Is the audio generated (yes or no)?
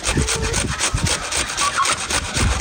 no